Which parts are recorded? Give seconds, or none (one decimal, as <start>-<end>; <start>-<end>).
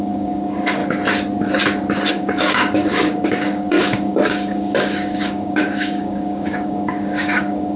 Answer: 0.8-2.1